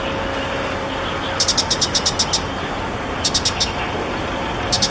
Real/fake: real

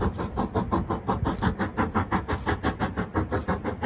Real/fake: real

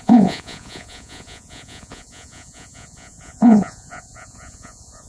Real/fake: fake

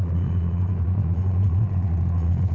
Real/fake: fake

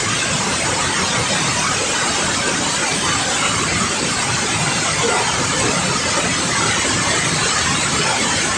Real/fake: real